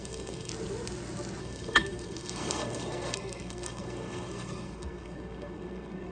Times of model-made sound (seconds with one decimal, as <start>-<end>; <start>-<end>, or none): 0.0-0.5; 1.4-6.1